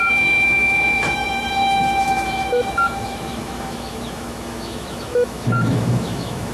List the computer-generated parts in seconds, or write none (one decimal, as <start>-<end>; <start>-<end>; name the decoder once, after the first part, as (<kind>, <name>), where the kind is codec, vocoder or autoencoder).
0.0-6.5 (autoencoder, DAC-VAE)